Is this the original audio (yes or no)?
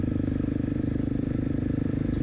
yes